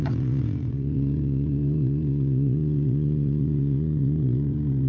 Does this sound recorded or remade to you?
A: remade